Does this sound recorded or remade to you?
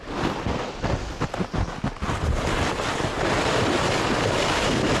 recorded